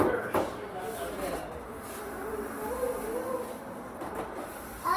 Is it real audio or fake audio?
real